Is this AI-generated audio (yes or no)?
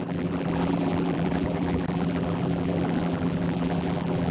yes